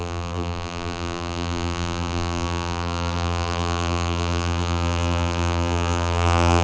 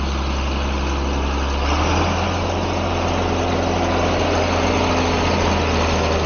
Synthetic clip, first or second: first